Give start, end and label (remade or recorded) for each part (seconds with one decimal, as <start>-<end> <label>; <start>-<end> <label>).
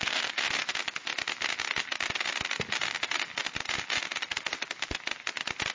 0.0-5.7 recorded